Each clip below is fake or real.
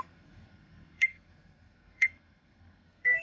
fake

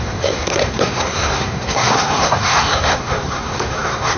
fake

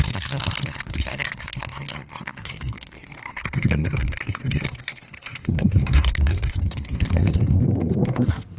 fake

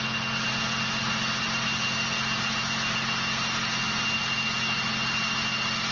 real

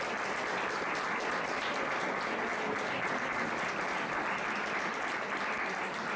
real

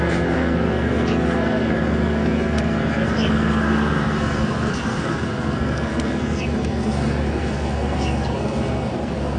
fake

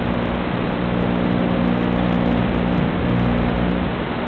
real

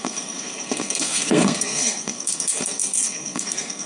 fake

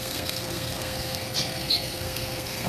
fake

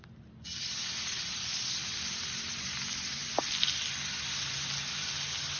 real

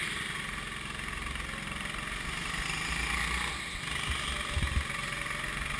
real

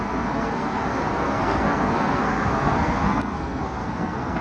fake